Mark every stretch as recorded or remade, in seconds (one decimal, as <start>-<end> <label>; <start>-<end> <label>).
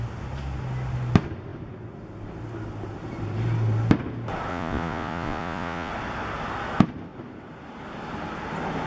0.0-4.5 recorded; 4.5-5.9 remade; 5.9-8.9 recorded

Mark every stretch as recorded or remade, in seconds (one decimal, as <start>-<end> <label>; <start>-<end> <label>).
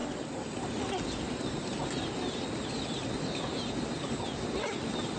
0.0-5.2 recorded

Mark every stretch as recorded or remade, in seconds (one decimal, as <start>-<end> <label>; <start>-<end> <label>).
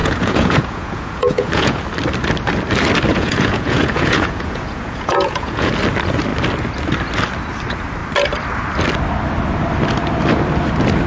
0.0-1.8 remade; 1.8-3.1 recorded; 3.1-5.7 remade; 5.7-11.1 recorded